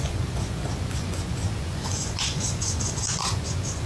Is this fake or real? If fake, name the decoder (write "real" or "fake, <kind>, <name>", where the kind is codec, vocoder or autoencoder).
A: fake, vocoder, Vocos